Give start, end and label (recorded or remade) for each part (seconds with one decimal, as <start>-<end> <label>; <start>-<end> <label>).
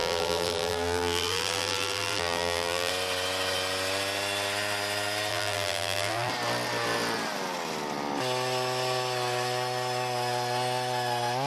0.0-2.9 remade; 2.9-5.3 recorded; 5.3-6.3 remade; 6.3-11.5 recorded